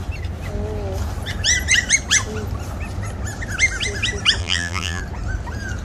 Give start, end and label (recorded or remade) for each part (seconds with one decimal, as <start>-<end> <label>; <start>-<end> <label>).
0.0-4.4 recorded; 4.4-5.0 remade; 5.0-5.8 recorded